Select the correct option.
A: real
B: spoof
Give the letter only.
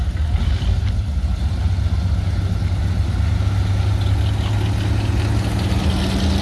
A